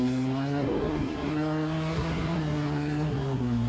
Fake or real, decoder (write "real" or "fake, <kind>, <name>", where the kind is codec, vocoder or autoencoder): fake, codec, SNAC